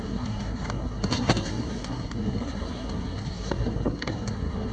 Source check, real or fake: fake